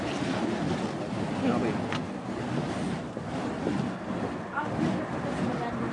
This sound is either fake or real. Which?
real